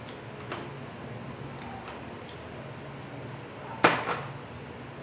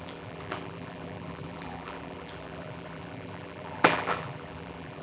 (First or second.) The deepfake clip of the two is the second